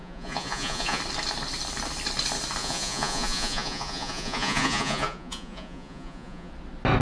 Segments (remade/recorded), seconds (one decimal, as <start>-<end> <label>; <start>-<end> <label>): 0.0-1.0 remade; 1.0-2.6 recorded; 2.6-6.5 remade; 6.5-7.0 recorded